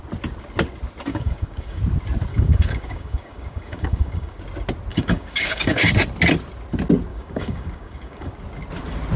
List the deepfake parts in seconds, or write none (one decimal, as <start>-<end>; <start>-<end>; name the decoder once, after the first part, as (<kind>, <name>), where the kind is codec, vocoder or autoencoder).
1.1-1.8 (codec, DAC); 2.3-4.4; 4.9-5.9; 7.1-8.3